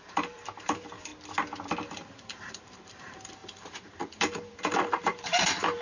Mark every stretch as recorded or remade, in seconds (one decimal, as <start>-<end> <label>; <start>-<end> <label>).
0.0-1.1 remade; 1.1-1.9 recorded; 1.9-5.8 remade